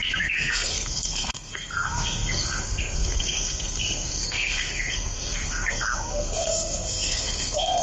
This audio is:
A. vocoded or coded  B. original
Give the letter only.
A